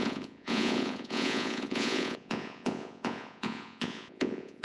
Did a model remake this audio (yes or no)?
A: yes